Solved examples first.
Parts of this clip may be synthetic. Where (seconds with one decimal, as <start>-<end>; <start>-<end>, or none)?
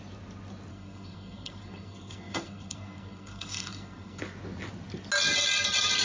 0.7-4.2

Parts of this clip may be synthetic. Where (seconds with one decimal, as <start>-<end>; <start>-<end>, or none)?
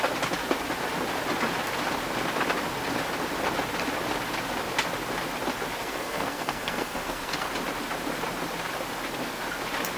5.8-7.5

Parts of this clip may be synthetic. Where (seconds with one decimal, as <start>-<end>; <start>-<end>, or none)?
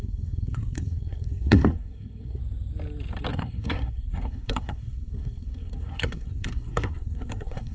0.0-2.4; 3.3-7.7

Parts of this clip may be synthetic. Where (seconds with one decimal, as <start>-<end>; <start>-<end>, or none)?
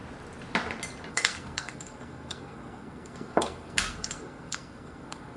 1.1-5.4